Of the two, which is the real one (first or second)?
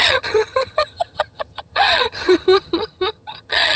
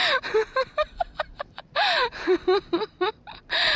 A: second